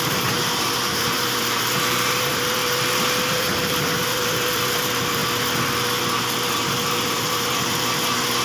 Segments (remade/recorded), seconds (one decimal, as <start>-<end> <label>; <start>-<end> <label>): 0.0-2.6 remade; 2.6-3.3 recorded; 3.3-5.2 remade; 5.2-6.5 recorded; 6.5-8.4 remade